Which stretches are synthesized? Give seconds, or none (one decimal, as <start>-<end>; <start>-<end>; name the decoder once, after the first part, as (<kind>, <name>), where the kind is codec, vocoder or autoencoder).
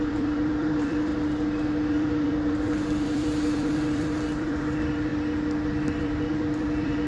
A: 0.0-1.1 (vocoder, BigVGAN v2); 1.9-5.1; 6.0-7.1